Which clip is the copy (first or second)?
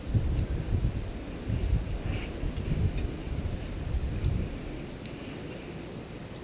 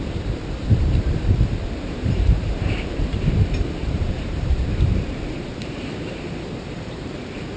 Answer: second